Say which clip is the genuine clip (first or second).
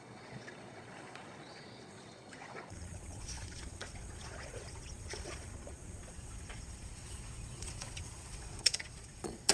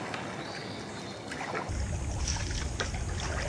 second